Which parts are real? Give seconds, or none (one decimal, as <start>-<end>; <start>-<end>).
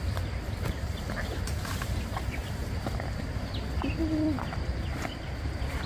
2.4-4.1